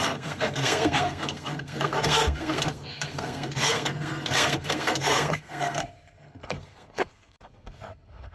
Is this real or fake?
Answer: fake